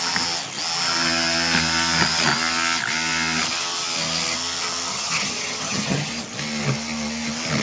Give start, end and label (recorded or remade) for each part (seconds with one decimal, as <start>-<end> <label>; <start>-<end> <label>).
0.0-4.9 recorded; 4.9-6.1 remade; 6.1-7.6 recorded